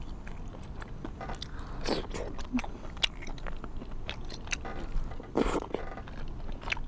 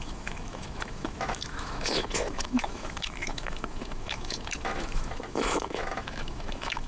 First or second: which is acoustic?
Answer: first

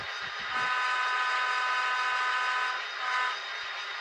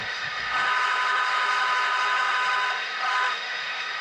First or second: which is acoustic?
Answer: first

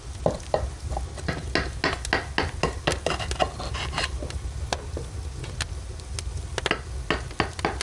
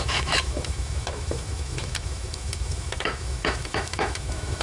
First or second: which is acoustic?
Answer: first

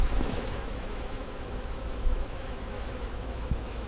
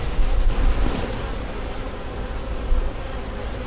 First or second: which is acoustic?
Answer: second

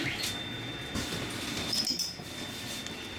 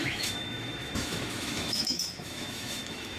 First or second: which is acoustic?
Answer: first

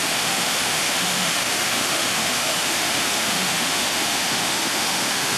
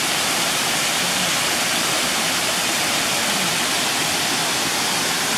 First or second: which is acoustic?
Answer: second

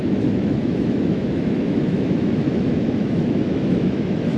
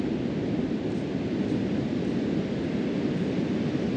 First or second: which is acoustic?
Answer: second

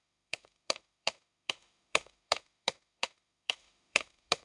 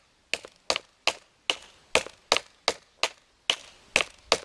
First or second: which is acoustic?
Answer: second